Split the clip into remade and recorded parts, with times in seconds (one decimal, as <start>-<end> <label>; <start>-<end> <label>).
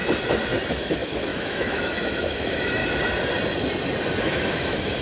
0.0-0.7 recorded; 0.7-2.8 remade; 2.8-4.2 recorded; 4.2-5.0 remade